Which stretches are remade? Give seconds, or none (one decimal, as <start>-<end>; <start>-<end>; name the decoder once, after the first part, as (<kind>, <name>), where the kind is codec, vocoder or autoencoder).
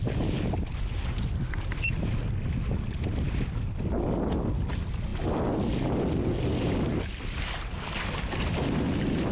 none